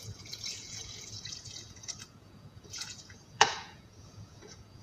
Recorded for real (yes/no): no